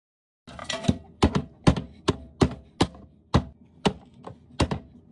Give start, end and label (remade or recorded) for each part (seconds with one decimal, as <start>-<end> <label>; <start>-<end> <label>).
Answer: 0.0-5.1 recorded